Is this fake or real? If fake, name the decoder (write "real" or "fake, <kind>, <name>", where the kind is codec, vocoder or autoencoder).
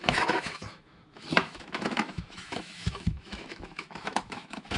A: fake, autoencoder, DAC-VAE